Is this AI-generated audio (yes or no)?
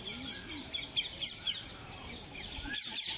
no